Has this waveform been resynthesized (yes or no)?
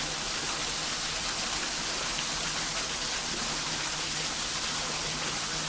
no